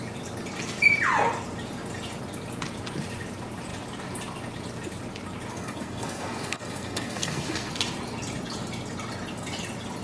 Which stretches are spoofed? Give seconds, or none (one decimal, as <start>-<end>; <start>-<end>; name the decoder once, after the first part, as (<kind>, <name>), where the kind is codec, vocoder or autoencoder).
5.5-7.7 (codec, SNAC)